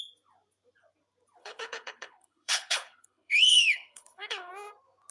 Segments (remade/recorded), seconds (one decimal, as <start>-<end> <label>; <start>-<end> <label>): 0.0-1.4 recorded; 1.4-4.5 remade; 4.5-5.1 recorded